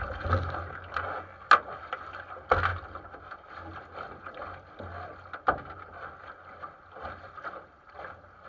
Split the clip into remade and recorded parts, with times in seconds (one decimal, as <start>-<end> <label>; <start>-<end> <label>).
0.0-8.5 recorded